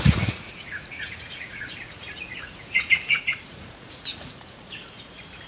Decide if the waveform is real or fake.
fake